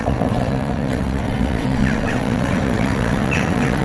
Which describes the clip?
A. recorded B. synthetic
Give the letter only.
B